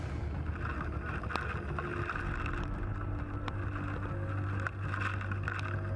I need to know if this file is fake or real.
real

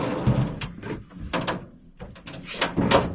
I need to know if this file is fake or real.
real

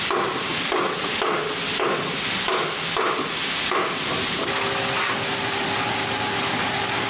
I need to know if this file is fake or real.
real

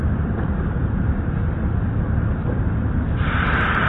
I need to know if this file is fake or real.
fake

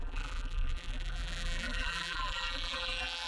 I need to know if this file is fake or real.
fake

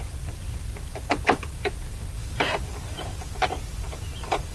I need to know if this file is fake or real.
fake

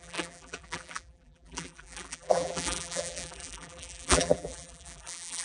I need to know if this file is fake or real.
fake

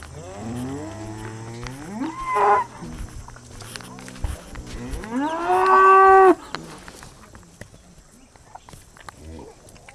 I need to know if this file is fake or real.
real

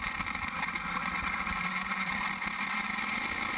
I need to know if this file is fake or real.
fake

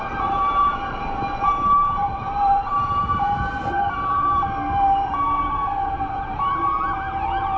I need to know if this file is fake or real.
fake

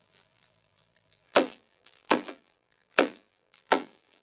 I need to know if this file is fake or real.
fake